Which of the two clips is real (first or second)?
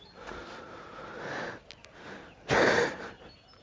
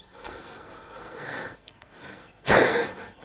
first